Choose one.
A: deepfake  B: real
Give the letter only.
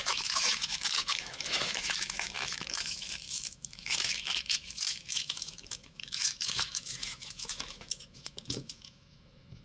A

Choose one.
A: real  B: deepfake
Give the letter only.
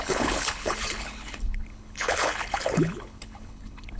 B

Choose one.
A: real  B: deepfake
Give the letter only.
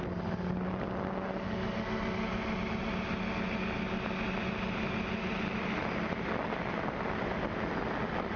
A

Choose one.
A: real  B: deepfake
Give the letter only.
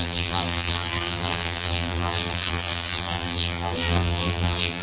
B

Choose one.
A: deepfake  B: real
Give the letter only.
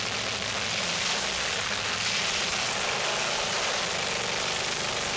B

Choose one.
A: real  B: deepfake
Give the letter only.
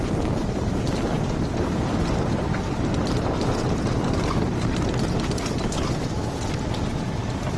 A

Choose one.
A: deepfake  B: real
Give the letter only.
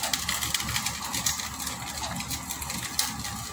B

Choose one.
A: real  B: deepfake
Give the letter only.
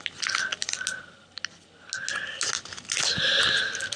A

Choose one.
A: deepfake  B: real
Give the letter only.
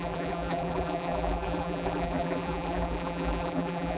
A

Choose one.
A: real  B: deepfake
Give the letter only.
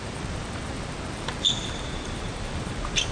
B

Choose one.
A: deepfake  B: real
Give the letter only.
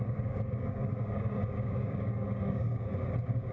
A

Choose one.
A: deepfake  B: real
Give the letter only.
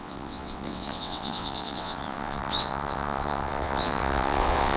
A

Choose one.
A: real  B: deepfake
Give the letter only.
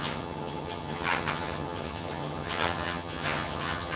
B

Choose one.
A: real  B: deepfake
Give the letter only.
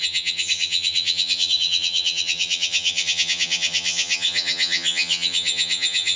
B